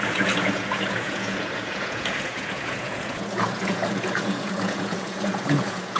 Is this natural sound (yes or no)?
no